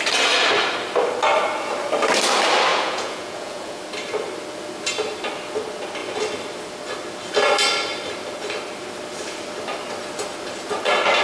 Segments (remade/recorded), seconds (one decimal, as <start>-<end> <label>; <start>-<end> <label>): 0.0-2.7 recorded; 2.7-3.8 remade; 3.8-11.2 recorded